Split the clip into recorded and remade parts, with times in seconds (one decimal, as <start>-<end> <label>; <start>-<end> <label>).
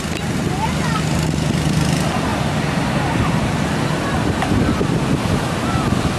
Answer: 0.0-6.2 recorded